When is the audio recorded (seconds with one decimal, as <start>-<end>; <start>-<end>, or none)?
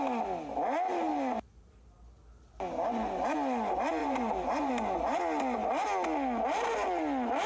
0.0-1.1; 1.7-4.0; 4.7-7.5